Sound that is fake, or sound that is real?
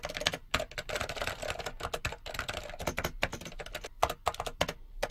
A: real